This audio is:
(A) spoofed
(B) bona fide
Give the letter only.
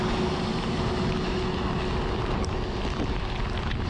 B